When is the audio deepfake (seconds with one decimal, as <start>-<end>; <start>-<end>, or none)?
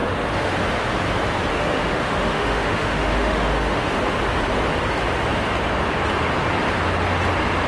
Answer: 0.0-0.5; 1.5-4.0